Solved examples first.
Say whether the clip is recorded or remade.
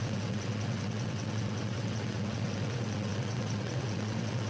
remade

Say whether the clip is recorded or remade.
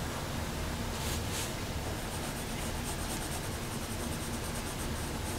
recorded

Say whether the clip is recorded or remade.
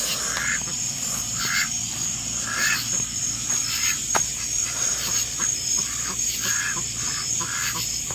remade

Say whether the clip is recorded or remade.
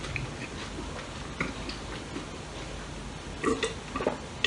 recorded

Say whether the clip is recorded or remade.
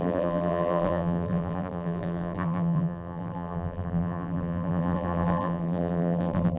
remade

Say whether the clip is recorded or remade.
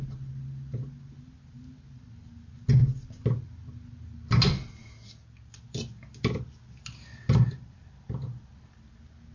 recorded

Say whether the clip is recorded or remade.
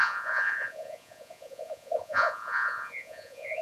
remade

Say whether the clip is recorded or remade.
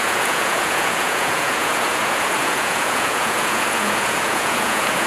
remade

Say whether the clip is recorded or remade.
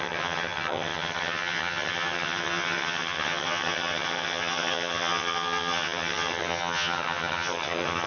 remade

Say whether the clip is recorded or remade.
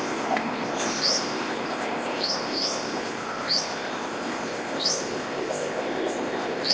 remade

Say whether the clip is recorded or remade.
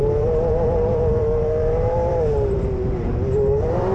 remade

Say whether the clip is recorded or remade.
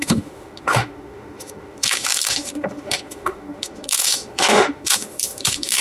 remade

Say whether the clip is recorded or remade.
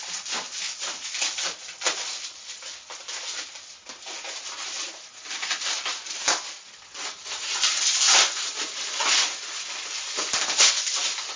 remade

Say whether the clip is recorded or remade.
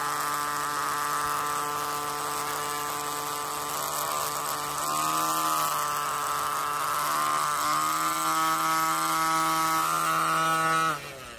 recorded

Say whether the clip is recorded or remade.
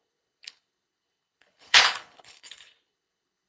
remade